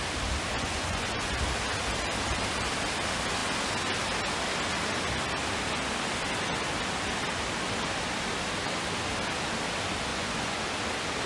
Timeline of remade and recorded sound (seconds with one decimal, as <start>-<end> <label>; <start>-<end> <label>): 0.0-0.5 recorded; 0.5-1.4 remade; 1.4-10.1 recorded; 10.1-10.6 remade; 10.6-11.3 recorded